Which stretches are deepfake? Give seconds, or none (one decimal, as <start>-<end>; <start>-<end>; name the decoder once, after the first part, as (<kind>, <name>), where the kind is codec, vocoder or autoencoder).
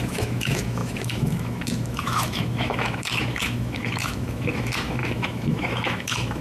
0.0-6.4 (autoencoder, DAC-VAE)